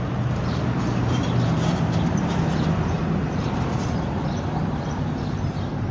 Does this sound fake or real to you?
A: fake